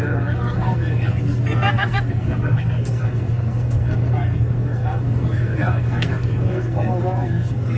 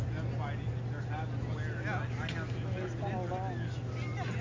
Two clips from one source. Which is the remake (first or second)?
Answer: first